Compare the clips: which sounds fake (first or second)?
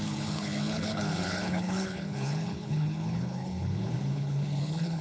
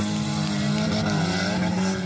first